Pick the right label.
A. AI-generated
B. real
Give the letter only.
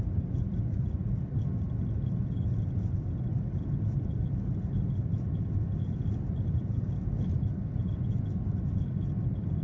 B